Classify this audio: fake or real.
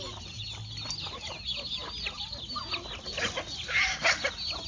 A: real